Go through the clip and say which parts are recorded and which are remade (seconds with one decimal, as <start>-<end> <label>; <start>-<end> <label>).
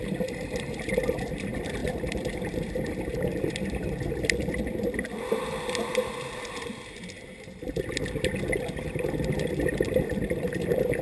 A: 0.0-1.8 recorded; 1.8-4.7 remade; 4.7-11.0 recorded